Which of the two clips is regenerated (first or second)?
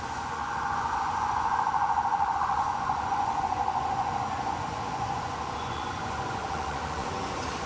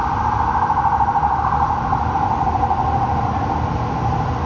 first